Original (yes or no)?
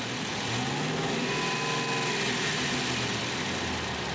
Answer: yes